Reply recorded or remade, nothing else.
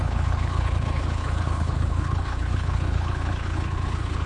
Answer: remade